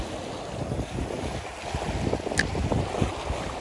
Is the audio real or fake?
real